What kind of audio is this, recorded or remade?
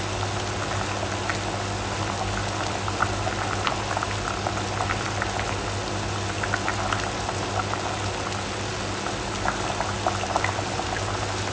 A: recorded